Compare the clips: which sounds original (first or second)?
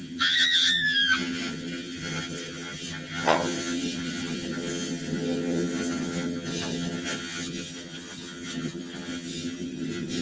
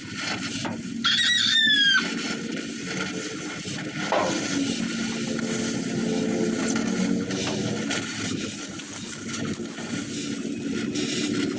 second